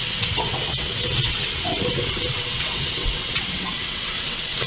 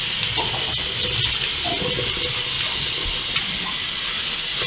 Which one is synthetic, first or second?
first